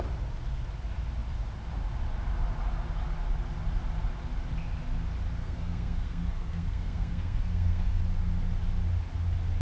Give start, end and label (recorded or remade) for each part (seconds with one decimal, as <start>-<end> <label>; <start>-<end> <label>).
0.0-5.4 recorded; 5.4-8.0 remade; 8.0-9.6 recorded